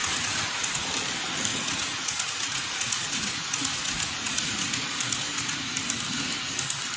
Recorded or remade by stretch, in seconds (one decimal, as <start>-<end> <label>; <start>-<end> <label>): 0.0-0.9 remade; 0.9-1.5 recorded; 1.5-5.7 remade; 5.7-7.0 recorded